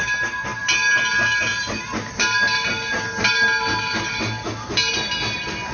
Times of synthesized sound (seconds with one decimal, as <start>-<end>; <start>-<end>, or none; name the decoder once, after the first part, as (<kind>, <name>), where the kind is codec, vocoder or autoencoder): none